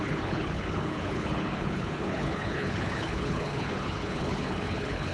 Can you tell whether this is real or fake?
fake